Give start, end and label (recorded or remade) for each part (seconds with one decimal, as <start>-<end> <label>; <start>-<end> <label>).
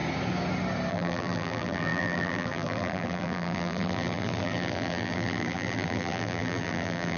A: 0.0-0.9 recorded; 0.9-7.2 remade